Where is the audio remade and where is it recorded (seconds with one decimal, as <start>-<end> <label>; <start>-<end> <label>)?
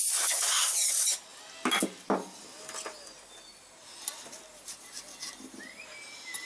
0.0-6.5 recorded